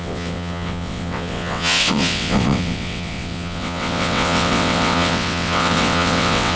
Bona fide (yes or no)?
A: no